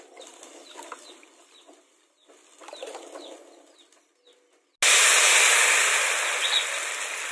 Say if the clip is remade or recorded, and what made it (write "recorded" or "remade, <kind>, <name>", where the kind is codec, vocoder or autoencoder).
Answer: recorded